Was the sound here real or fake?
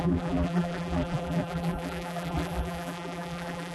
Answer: fake